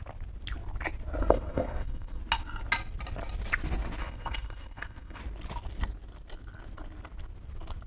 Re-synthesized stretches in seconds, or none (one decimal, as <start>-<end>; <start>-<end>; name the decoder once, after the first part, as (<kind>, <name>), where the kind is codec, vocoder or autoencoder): 1.2-2.2 (codec, SNAC); 4.0-5.2